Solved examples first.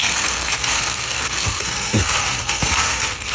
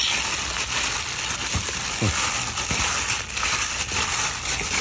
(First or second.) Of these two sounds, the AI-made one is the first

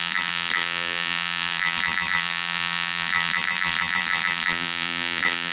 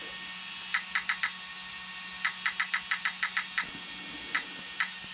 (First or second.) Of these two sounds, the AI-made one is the first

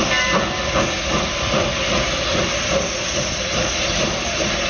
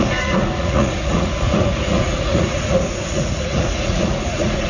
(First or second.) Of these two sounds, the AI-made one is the second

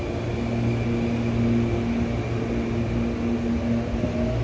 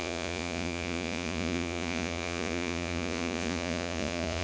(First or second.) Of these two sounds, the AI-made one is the second